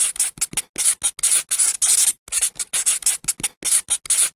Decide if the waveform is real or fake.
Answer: real